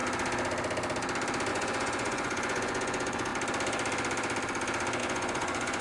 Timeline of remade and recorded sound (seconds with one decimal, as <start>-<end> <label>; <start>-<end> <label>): 0.0-1.5 recorded; 1.5-3.3 remade; 3.3-5.0 recorded; 5.0-5.8 remade